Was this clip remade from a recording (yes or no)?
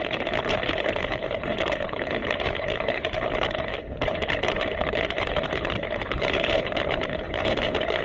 yes